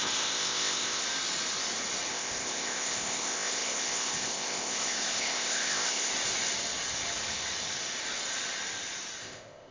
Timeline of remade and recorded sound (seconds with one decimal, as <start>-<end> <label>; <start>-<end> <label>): 0.0-1.0 remade; 1.0-2.1 recorded; 2.1-6.1 remade; 6.1-9.2 recorded; 9.2-9.7 remade